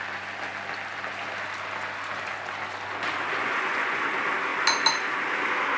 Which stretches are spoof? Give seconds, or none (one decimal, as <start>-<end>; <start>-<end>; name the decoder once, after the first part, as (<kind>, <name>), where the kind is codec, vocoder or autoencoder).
3.4-4.0 (vocoder, Vocos)